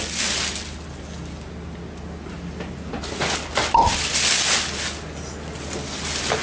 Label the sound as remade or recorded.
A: recorded